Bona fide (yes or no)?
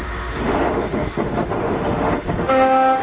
no